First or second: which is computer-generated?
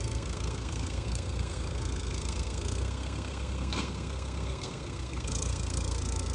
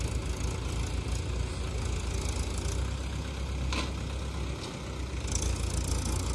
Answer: first